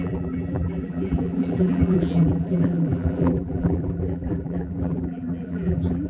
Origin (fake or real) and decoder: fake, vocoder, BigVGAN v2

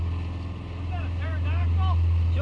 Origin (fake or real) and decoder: real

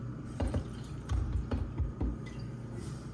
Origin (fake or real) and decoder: fake, vocoder, BigVGAN v2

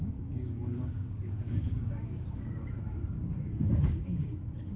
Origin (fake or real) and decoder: fake, codec, DAC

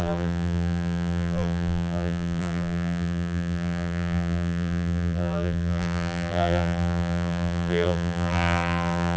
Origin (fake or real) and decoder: fake, vocoder, BigVGAN v2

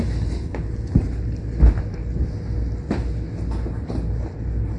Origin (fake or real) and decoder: real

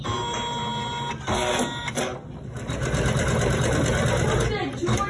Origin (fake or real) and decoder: real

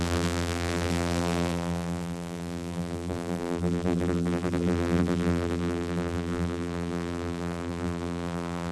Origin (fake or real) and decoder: fake, vocoder, BigVGAN v2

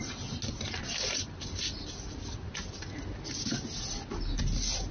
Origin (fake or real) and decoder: real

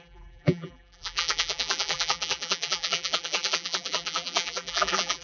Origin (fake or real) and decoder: fake, vocoder, BigVGAN v2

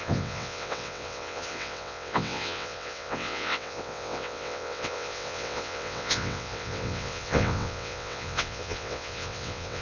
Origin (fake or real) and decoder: fake, vocoder, WaveNeXt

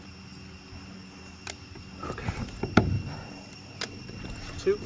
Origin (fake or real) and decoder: real